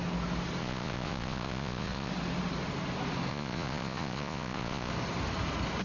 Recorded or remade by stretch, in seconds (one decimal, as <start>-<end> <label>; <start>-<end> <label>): 0.0-0.6 recorded; 0.6-2.1 remade; 2.1-3.3 recorded; 3.3-4.9 remade; 4.9-5.8 recorded